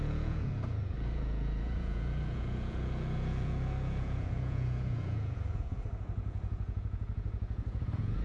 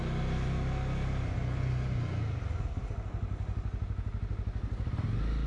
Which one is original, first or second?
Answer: second